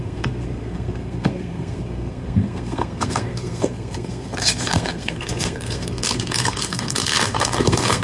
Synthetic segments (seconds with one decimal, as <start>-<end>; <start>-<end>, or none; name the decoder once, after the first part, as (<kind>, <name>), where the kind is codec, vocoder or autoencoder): 0.0-8.0 (codec, SNAC)